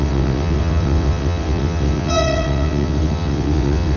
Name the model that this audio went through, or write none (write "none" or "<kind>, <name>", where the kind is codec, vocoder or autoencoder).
vocoder, WaveNeXt